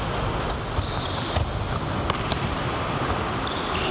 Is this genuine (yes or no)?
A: yes